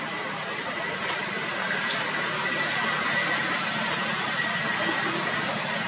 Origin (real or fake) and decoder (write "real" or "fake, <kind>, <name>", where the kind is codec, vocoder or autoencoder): real